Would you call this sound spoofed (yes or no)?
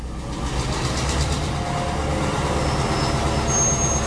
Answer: no